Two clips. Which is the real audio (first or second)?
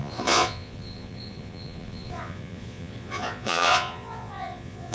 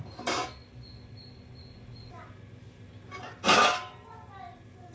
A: second